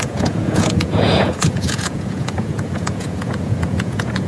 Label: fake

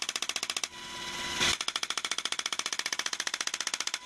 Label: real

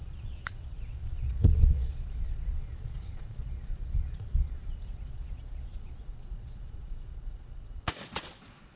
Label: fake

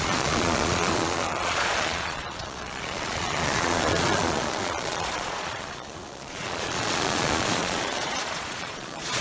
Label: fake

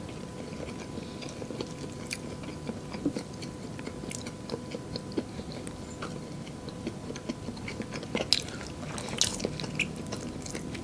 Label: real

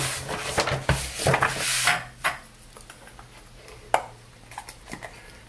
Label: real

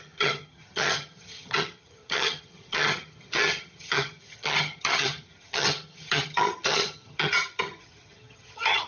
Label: fake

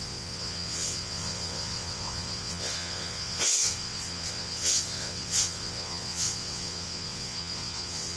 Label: fake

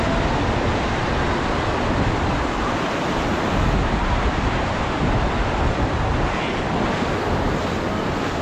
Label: real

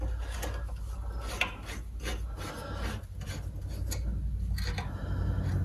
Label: real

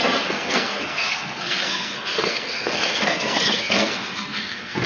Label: fake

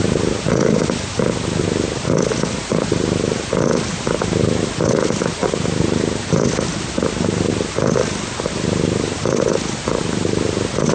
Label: real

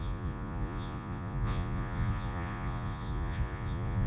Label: fake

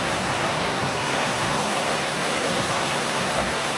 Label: fake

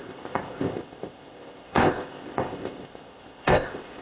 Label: fake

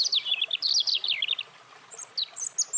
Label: real